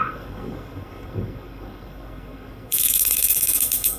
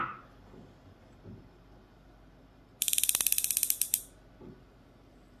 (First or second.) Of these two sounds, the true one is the second